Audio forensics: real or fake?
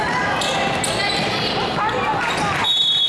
real